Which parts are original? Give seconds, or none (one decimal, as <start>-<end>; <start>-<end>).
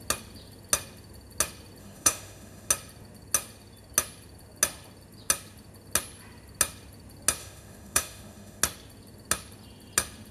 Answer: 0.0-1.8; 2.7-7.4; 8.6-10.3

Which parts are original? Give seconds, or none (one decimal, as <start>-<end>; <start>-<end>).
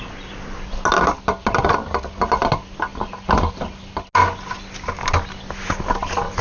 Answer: 0.0-6.4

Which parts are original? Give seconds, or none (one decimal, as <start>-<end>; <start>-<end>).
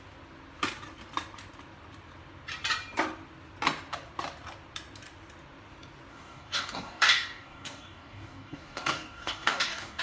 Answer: 0.0-6.1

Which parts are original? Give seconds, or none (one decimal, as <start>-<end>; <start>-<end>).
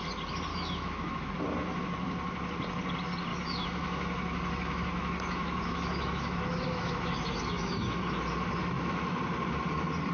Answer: 0.0-0.5; 1.3-3.3; 8.1-8.6; 9.2-10.1